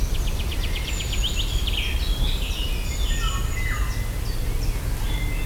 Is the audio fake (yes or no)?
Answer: no